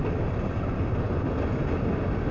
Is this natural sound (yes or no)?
yes